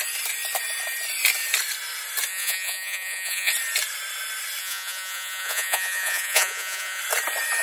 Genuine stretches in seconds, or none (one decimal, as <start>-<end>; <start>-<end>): 0.0-2.3; 3.5-4.6; 7.0-7.6